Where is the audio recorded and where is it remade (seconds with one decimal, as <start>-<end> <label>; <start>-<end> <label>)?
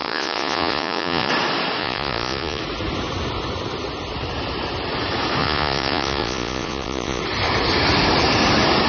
0.0-1.3 remade; 1.3-1.8 recorded; 1.8-2.6 remade; 2.6-5.4 recorded; 5.4-7.2 remade; 7.2-8.9 recorded